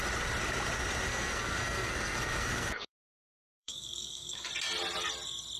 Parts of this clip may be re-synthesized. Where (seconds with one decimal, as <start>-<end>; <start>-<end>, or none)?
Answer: 1.1-4.5